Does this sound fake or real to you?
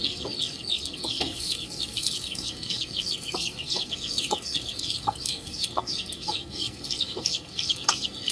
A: fake